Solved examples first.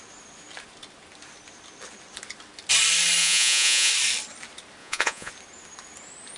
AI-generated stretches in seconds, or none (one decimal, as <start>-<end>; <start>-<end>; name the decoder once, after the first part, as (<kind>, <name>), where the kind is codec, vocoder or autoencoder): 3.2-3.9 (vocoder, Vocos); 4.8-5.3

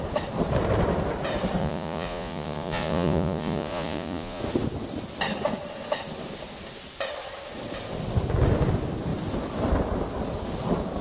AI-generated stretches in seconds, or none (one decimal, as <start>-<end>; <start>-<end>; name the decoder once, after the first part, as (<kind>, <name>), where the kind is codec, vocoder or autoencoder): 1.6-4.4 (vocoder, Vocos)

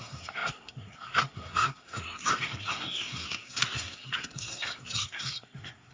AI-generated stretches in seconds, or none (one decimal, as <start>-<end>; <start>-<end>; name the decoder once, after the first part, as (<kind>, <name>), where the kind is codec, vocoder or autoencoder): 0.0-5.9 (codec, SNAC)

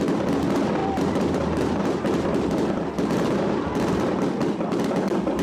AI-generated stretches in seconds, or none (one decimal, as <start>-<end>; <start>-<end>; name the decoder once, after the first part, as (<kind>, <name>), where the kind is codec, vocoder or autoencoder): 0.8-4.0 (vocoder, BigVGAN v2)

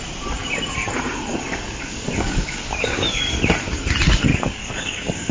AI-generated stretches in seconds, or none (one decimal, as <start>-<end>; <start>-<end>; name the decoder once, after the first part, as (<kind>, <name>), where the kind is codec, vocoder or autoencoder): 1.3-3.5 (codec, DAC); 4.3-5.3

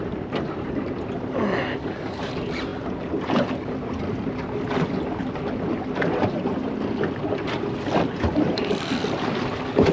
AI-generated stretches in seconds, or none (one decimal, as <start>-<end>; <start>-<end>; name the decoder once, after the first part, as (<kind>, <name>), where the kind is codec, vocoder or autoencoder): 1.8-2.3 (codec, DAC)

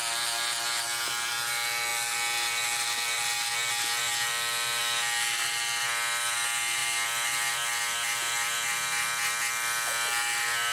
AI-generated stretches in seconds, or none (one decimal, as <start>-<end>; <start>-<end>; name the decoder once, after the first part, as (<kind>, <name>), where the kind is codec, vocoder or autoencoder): none

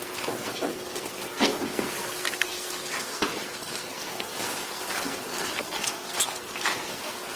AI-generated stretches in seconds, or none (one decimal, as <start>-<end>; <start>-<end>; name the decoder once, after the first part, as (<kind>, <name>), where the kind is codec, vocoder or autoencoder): 0.0-7.4 (codec, SNAC)